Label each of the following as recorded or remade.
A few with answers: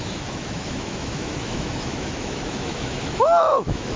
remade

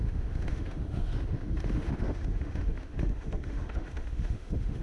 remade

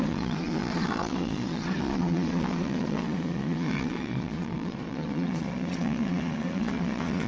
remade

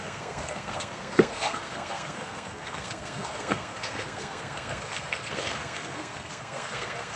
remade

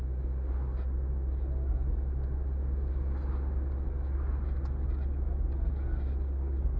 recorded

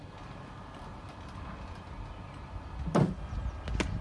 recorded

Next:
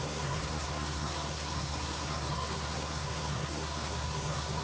remade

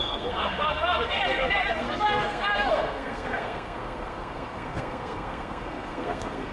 remade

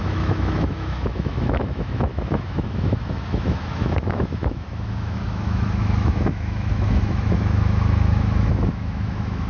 remade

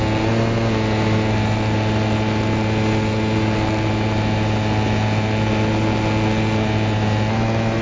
recorded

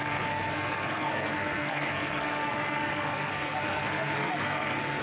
remade